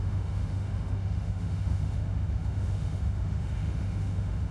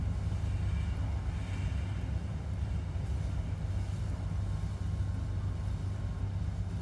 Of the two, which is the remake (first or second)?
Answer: first